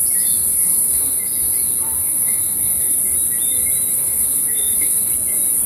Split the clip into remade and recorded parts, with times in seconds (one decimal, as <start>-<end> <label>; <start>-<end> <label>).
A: 0.0-0.5 recorded; 0.5-1.2 remade; 1.2-2.0 recorded; 2.0-3.0 remade; 3.0-3.9 recorded; 3.9-5.1 remade; 5.1-5.7 recorded